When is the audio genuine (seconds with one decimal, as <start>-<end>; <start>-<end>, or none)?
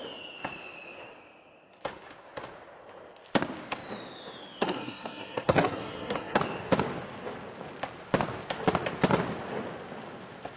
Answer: 0.0-4.6; 6.4-10.6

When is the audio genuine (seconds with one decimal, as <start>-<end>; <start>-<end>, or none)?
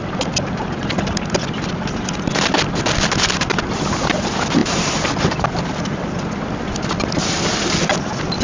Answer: 0.0-8.4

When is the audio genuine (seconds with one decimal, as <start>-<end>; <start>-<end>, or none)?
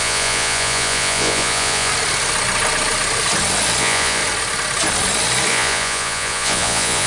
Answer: 1.9-3.8; 4.2-5.5